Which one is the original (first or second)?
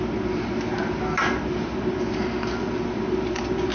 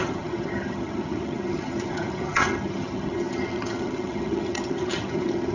first